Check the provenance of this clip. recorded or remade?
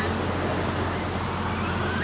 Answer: recorded